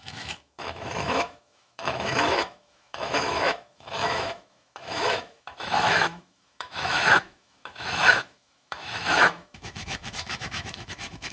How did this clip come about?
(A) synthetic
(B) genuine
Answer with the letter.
A